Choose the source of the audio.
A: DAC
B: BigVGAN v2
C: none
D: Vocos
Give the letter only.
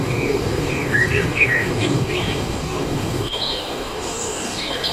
A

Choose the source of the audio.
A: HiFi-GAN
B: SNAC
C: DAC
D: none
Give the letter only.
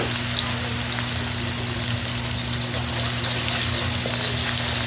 D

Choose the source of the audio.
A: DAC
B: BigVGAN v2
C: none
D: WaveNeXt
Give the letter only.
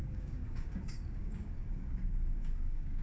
A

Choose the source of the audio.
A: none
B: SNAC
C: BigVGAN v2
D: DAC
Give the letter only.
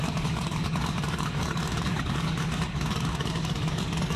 D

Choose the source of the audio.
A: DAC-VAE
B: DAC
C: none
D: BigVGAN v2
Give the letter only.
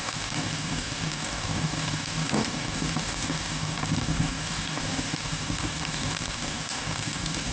B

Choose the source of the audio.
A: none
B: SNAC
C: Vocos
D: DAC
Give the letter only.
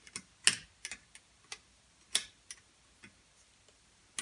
A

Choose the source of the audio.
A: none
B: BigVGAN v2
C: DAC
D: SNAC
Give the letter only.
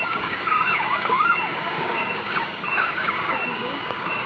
C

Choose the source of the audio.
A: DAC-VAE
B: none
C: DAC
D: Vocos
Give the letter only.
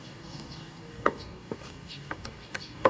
C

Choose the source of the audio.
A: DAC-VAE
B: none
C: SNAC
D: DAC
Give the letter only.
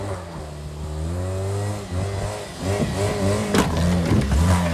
B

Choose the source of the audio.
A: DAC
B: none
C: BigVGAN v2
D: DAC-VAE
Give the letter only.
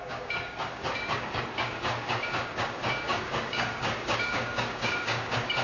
A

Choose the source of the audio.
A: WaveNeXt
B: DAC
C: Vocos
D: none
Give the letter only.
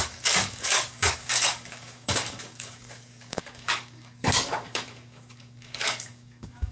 B